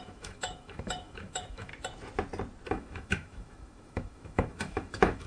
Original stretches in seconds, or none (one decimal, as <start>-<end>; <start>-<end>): 1.7-2.7